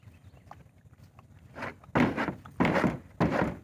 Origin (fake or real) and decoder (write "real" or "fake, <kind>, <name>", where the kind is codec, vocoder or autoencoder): real